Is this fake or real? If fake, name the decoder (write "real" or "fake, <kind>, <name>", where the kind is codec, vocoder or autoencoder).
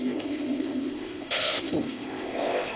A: fake, codec, ZipCodec